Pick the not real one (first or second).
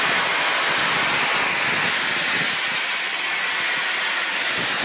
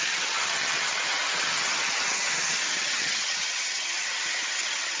second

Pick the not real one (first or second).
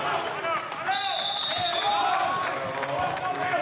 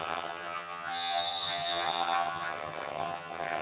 second